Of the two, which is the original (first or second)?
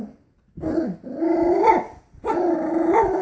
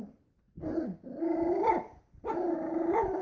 first